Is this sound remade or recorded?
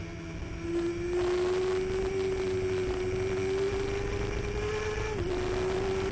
recorded